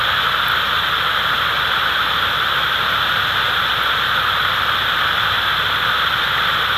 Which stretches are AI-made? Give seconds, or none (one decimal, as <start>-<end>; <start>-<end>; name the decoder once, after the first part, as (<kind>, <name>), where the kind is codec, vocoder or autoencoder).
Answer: none